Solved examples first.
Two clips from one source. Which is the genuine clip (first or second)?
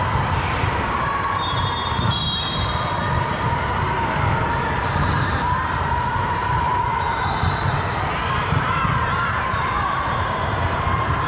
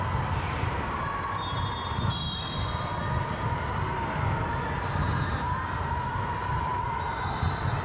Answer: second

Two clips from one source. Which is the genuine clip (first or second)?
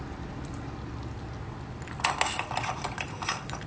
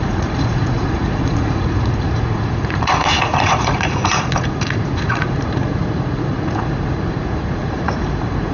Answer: first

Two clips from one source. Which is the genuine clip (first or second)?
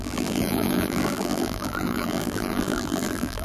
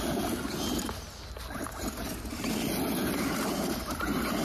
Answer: second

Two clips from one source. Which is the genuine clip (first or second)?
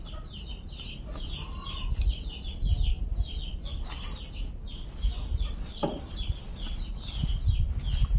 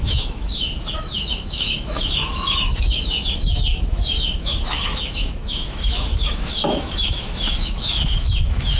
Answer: first